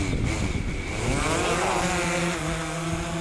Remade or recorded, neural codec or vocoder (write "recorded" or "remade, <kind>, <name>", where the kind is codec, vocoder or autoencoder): recorded